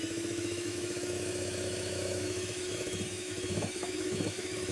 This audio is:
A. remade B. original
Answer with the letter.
A